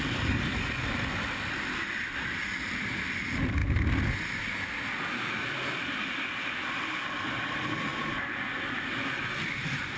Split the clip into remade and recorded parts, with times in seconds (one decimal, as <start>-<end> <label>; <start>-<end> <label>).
0.0-3.6 remade; 3.6-4.9 recorded; 4.9-7.9 remade; 7.9-8.7 recorded; 8.7-10.0 remade